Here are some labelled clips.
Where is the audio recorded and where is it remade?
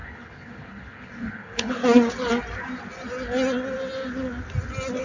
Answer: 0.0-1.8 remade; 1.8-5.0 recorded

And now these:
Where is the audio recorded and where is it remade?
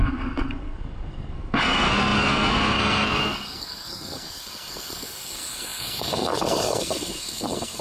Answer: 0.0-7.8 remade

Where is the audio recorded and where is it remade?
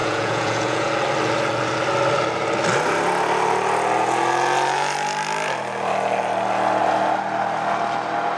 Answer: 0.0-0.9 remade; 0.9-8.4 recorded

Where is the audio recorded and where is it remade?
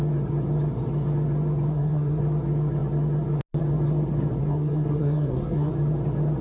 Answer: 0.0-1.7 recorded; 1.7-2.2 remade; 2.2-4.4 recorded; 4.4-5.7 remade; 5.7-6.4 recorded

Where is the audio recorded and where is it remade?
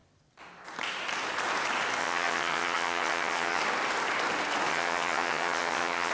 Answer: 0.0-2.0 recorded; 2.0-3.6 remade; 3.6-4.7 recorded; 4.7-6.1 remade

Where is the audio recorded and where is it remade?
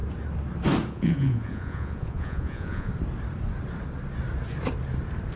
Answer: 0.0-0.9 recorded; 0.9-2.9 remade; 2.9-5.4 recorded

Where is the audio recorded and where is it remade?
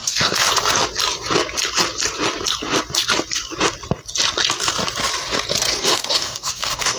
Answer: 0.0-0.5 remade; 0.5-5.8 recorded; 5.8-7.0 remade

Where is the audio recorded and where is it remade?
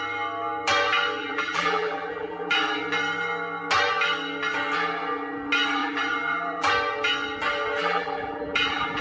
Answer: 0.0-1.2 recorded; 1.2-2.5 remade; 2.5-5.8 recorded; 5.8-6.7 remade; 6.7-7.8 recorded; 7.8-9.0 remade